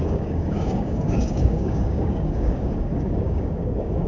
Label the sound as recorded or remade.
remade